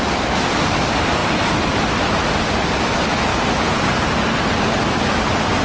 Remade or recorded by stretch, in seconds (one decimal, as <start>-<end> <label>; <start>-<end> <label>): 0.0-5.6 recorded